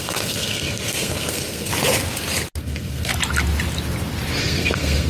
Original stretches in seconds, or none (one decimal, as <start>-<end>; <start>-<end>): 1.7-2.6; 3.1-4.4